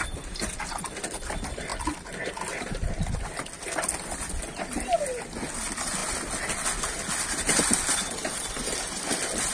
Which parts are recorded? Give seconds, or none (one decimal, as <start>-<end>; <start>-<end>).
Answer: 0.0-9.5